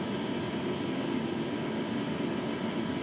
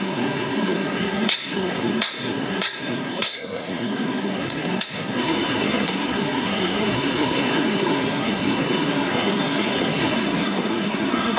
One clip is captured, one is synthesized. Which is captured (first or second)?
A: first